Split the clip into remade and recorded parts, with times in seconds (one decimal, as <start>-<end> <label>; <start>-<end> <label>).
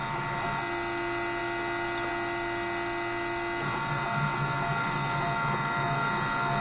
0.0-6.6 recorded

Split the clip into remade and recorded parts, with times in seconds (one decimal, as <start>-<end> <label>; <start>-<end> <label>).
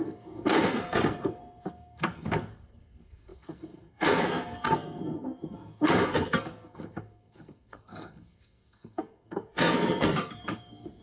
0.0-11.0 remade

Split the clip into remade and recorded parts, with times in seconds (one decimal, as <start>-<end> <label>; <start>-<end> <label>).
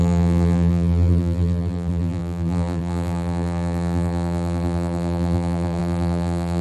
0.0-6.6 remade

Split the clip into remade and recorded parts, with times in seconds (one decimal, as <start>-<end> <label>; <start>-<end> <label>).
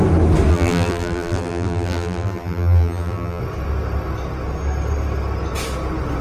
0.0-0.5 recorded; 0.5-3.4 remade; 3.4-6.2 recorded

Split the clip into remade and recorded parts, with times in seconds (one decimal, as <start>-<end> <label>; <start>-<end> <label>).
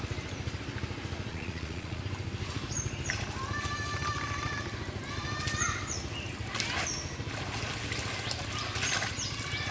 0.0-1.3 recorded; 1.3-2.0 remade; 2.0-9.7 recorded